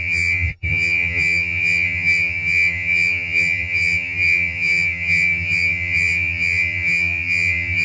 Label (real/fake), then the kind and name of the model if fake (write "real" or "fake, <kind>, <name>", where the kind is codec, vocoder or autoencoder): fake, vocoder, HiFi-GAN